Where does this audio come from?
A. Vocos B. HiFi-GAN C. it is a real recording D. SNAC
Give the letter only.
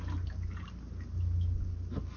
C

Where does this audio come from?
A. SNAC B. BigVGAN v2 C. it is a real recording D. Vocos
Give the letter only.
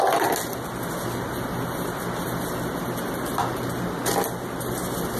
C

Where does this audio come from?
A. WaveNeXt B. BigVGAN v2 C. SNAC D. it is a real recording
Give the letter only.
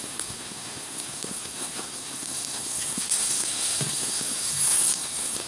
C